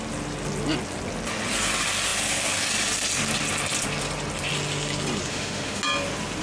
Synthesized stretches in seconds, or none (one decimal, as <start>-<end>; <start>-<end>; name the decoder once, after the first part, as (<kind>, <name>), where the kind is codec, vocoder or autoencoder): 5.3-5.8 (autoencoder, DAC-VAE)